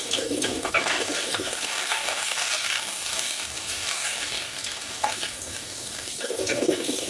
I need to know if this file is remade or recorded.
remade